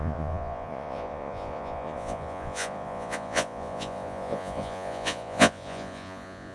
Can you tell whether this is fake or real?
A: fake